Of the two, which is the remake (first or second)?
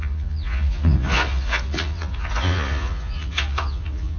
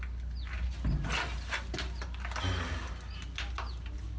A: first